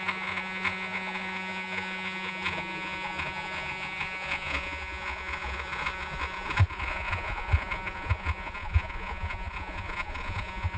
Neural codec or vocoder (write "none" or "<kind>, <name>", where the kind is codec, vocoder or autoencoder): vocoder, Vocos